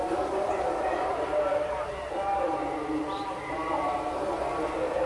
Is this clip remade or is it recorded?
recorded